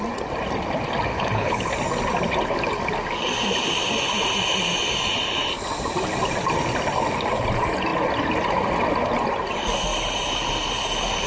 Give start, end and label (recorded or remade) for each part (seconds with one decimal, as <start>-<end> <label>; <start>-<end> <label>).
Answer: 0.0-1.1 recorded; 1.1-1.7 remade; 1.7-11.3 recorded

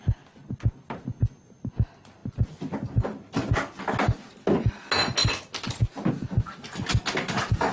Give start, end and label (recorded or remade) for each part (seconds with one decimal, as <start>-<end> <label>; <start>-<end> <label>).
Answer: 0.0-7.7 recorded

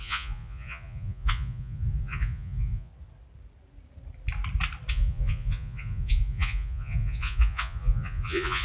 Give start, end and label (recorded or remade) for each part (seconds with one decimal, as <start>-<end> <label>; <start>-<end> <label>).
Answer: 0.0-2.9 remade; 2.9-4.9 recorded; 4.9-8.6 remade